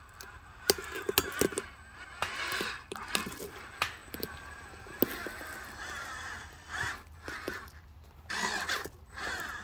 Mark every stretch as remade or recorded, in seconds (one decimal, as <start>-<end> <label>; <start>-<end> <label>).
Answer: 0.0-9.6 recorded